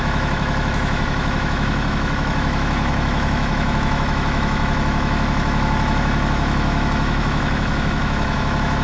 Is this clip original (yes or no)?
no